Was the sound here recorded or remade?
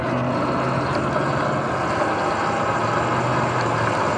recorded